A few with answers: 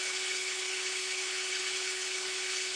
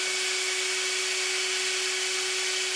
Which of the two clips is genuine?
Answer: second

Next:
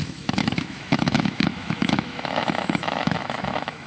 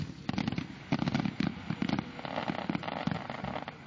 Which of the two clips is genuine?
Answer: second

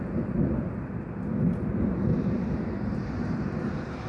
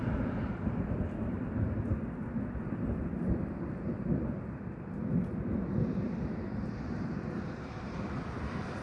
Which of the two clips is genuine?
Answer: first